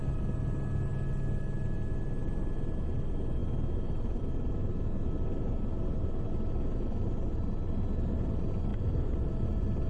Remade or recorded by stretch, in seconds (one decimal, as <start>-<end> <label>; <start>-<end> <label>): 0.0-9.9 recorded